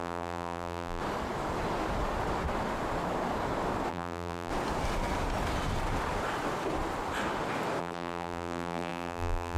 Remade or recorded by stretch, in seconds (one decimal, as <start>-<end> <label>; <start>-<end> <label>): 0.0-1.0 remade; 1.0-3.9 recorded; 3.9-4.5 remade; 4.5-7.8 recorded; 7.8-9.6 remade